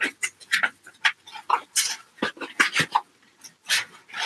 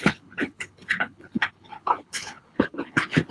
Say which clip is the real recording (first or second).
first